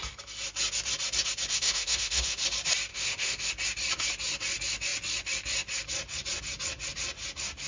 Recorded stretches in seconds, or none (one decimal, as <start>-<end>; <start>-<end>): 0.0-1.5; 2.4-2.9; 3.5-7.7